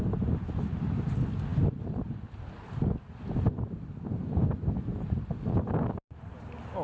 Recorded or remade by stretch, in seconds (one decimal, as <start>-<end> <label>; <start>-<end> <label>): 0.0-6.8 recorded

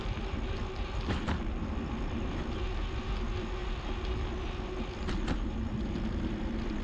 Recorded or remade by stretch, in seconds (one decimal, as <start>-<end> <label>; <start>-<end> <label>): 0.0-6.8 recorded

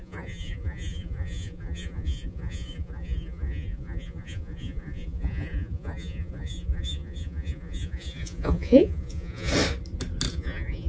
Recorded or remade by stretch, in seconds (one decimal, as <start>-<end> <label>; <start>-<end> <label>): 0.0-9.5 remade; 9.5-10.3 recorded; 10.3-10.9 remade